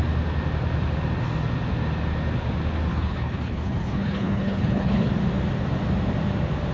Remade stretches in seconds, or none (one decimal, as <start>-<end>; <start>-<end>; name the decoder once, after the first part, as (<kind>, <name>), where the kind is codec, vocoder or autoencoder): 2.9-5.1 (codec, HILCodec)